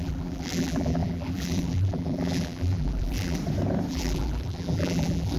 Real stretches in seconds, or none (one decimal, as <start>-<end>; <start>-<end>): 3.4-3.9